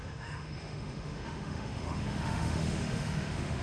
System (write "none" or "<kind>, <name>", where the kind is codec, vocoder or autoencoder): autoencoder, DAC-VAE